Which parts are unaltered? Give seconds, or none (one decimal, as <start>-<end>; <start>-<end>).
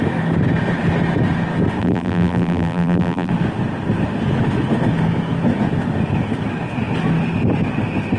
0.0-1.8; 3.3-8.2